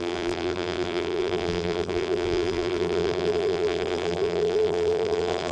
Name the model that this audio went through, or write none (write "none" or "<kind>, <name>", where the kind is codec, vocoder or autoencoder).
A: vocoder, BigVGAN v2